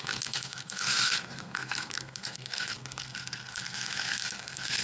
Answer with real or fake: fake